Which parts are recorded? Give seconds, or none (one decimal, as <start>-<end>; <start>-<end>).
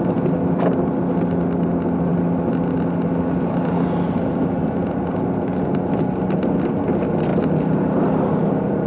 0.0-8.9